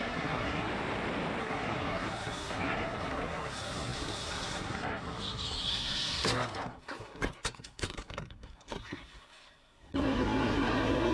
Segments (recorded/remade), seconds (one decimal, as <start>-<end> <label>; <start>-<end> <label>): 0.0-0.7 remade; 0.7-1.4 recorded; 1.4-11.1 remade